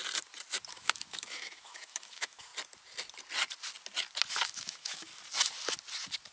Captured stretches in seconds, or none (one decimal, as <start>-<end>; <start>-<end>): 0.0-0.7; 2.5-4.3; 5.1-6.3